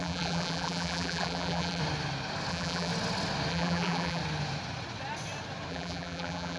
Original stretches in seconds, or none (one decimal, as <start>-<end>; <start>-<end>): 1.8-2.5; 2.9-3.5; 4.2-5.7